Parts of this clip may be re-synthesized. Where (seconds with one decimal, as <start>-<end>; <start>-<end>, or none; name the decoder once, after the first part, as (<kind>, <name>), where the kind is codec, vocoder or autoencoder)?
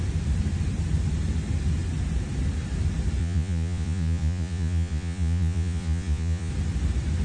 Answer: 3.2-6.5 (vocoder, Vocos)